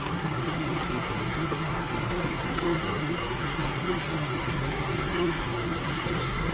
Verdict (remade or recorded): remade